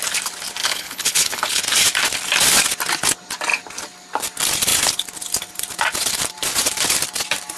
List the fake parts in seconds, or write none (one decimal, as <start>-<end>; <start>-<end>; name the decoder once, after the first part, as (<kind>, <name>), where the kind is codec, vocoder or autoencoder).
0.6-1.6 (codec, HILCodec)

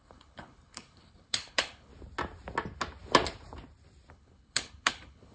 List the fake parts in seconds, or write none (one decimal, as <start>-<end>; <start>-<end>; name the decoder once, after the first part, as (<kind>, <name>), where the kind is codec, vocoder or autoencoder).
0.0-1.9 (codec, HILCodec); 4.1-5.3

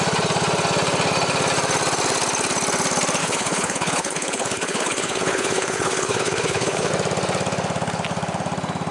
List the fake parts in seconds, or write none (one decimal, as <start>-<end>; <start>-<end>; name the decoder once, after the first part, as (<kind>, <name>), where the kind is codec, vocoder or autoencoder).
3.2-6.9 (codec, HILCodec)

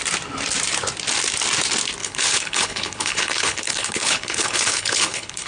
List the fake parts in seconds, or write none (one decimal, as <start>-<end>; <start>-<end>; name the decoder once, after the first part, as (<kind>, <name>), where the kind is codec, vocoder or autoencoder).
2.0-5.5 (codec, HILCodec)

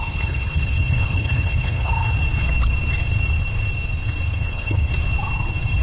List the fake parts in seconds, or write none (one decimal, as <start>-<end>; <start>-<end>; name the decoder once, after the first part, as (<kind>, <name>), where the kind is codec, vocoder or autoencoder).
0.0-1.9 (codec, HILCodec); 4.4-4.9

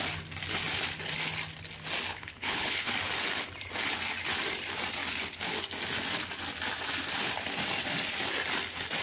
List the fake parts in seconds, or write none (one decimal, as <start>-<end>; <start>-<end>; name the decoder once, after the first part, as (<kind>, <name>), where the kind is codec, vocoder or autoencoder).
2.1-2.9 (codec, HILCodec)

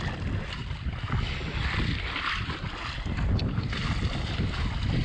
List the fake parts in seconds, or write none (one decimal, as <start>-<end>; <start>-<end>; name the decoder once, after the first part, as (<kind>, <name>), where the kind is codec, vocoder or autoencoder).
none

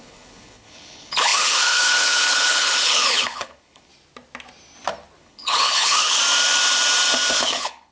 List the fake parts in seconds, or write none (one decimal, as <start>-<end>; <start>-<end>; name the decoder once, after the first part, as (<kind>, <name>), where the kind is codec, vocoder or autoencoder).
0.0-3.9 (codec, HILCodec); 5.2-6.2; 7.3-7.9